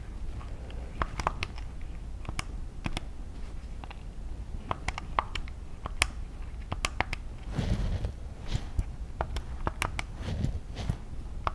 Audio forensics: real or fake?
real